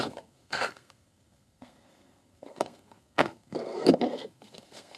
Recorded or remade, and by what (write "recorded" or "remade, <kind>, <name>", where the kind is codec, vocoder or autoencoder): remade, codec, SNAC